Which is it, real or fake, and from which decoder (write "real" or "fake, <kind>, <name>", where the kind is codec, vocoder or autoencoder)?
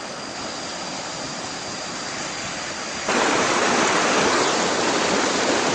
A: fake, vocoder, BigVGAN v2